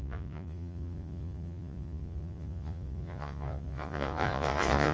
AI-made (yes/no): yes